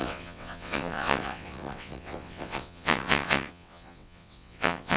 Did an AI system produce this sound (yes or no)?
yes